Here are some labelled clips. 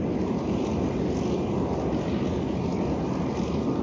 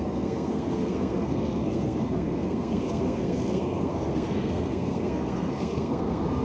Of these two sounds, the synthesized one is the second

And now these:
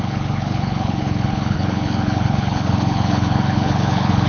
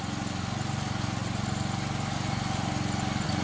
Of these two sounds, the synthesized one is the first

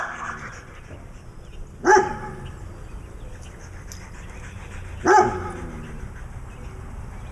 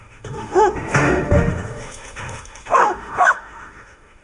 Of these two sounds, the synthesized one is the second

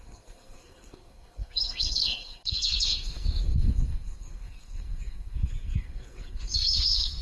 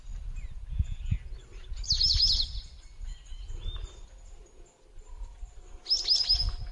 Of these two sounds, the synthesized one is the first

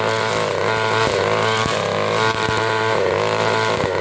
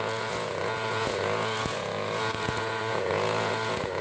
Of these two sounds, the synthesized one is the second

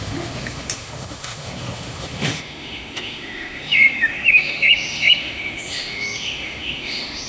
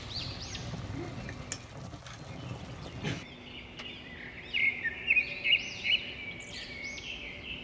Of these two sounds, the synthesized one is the first